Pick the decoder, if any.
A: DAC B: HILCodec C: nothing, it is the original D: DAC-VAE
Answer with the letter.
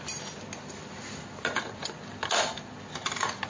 C